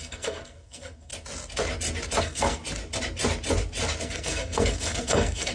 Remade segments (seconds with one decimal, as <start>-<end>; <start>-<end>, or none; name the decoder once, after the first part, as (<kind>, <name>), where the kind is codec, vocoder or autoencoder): 0.0-1.1 (codec, SNAC); 2.2-2.6; 4.0-5.5